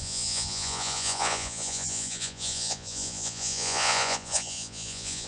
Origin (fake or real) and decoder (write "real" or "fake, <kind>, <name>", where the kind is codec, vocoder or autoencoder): fake, vocoder, Vocos